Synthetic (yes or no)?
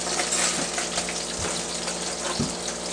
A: no